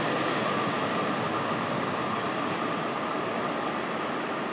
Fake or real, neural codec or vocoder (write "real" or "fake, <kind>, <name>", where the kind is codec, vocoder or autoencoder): real